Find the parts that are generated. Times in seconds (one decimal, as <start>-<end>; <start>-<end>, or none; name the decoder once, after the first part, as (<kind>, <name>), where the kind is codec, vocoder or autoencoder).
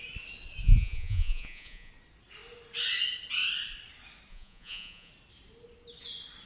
0.6-1.9 (vocoder, Vocos); 4.3-5.1